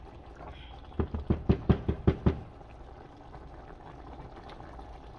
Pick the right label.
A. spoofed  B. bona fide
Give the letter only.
B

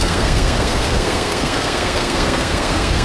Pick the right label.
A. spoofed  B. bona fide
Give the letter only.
A